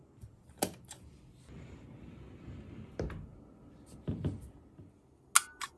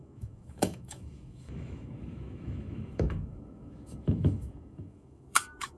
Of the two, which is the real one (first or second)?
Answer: first